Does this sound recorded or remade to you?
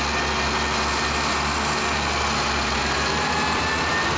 recorded